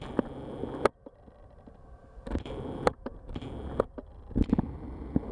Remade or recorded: recorded